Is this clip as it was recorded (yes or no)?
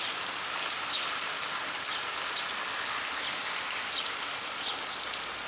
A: yes